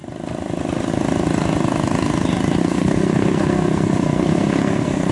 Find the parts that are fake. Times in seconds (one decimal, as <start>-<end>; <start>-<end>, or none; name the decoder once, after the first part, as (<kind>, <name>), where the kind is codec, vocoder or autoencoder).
2.6-5.1 (codec, SNAC)